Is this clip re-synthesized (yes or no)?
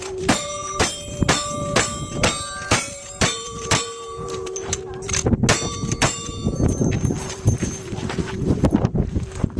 yes